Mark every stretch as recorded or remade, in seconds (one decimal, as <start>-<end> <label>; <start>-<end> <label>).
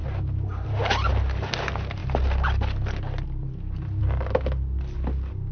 0.0-1.1 remade; 1.1-5.5 recorded